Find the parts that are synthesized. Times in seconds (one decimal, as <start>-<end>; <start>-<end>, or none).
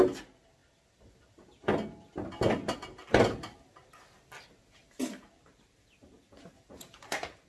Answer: none